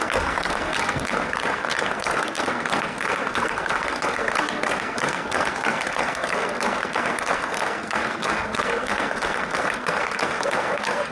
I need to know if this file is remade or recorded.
remade